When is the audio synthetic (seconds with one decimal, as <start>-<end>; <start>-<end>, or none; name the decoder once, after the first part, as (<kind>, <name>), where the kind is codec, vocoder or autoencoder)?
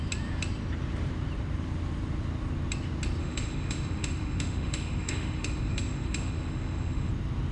3.2-7.1 (autoencoder, DAC-VAE)